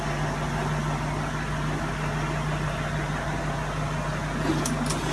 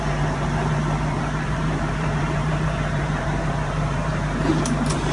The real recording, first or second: first